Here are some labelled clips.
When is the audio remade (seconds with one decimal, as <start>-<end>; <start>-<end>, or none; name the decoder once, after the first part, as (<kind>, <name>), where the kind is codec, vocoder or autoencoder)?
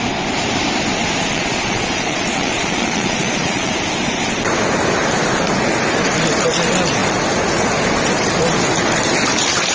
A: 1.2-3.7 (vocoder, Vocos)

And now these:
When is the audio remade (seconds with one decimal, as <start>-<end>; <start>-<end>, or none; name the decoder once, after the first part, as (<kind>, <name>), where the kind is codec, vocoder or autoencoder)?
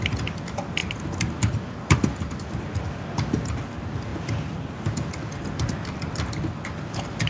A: none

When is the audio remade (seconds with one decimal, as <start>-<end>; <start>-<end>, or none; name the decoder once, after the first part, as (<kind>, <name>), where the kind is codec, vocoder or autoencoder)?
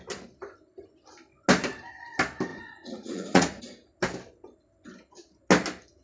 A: 2.5-3.6 (vocoder, Vocos)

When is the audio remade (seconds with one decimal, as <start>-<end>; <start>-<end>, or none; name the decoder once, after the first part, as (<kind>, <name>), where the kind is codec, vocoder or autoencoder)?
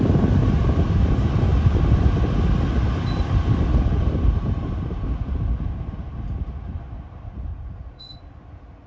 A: 7.5-8.2 (vocoder, Vocos)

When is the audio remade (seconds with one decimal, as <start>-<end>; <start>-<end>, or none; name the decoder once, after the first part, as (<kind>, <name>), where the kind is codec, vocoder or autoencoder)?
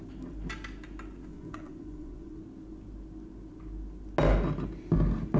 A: 1.3-2.4 (vocoder, Vocos)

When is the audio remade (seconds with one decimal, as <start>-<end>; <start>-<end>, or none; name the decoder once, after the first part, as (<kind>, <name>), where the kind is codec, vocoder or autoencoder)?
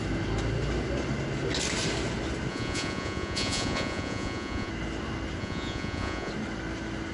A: 2.5-4.7 (vocoder, Vocos); 5.4-6.3